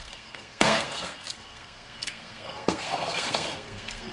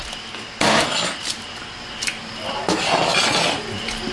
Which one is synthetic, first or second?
first